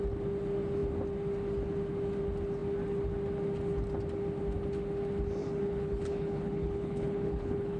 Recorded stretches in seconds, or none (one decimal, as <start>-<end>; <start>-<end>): 0.0-5.4